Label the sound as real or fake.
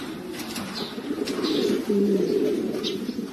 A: real